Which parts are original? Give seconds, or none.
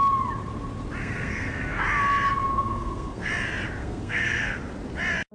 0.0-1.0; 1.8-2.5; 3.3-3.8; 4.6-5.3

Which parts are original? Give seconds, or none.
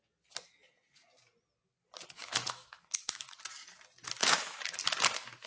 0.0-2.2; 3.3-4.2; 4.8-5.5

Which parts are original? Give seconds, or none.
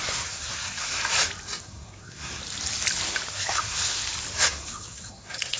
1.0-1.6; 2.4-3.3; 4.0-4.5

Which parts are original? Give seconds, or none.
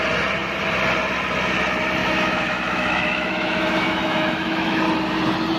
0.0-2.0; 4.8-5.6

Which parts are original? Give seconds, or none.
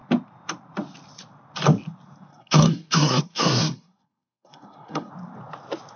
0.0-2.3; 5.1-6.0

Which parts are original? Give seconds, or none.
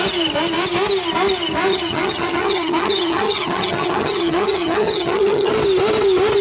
0.0-1.7; 5.5-6.4